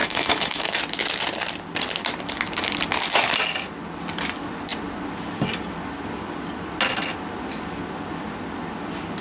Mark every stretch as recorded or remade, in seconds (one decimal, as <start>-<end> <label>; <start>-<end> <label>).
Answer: 0.0-0.8 remade; 0.8-9.2 recorded